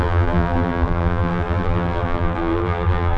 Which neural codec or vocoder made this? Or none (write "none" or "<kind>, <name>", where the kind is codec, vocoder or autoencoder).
vocoder, BigVGAN v2